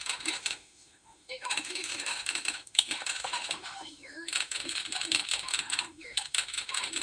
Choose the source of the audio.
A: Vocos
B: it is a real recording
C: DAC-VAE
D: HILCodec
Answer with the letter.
C